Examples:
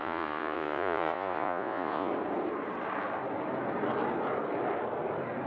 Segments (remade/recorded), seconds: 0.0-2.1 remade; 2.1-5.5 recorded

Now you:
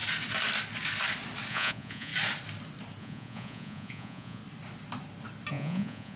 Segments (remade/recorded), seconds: 0.0-1.5 recorded; 1.5-2.1 remade; 2.1-3.0 recorded; 3.0-4.4 remade; 4.4-5.5 recorded; 5.5-6.2 remade

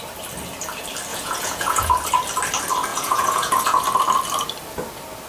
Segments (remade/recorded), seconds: 0.0-1.1 recorded; 1.1-1.9 remade; 1.9-2.9 recorded; 2.9-3.8 remade; 3.8-5.3 recorded

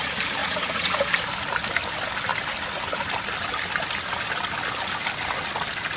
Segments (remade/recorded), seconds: 0.0-0.4 recorded; 0.4-1.0 remade; 1.0-6.0 recorded

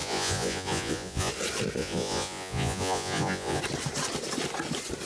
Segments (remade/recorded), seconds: 0.0-1.3 remade; 1.3-1.8 recorded; 1.8-3.6 remade; 3.6-5.1 recorded

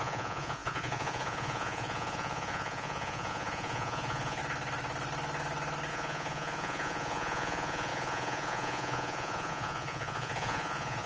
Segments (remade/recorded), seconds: 0.0-4.4 remade; 4.4-5.9 recorded; 5.9-11.1 remade